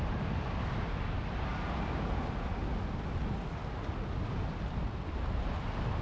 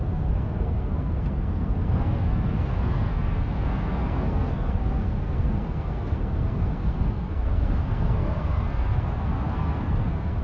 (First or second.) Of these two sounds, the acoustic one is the first